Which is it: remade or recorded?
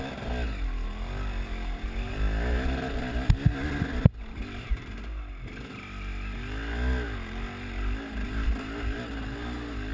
recorded